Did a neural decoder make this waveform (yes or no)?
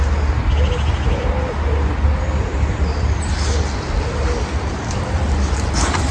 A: no